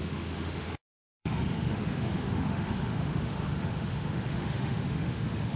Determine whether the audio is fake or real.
fake